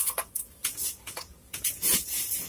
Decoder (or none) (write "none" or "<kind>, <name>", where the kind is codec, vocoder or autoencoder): vocoder, Vocos